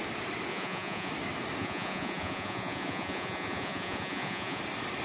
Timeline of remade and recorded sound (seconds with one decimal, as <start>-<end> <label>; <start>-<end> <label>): 0.0-0.5 recorded; 0.5-1.1 remade; 1.1-1.6 recorded; 1.6-4.6 remade; 4.6-5.0 recorded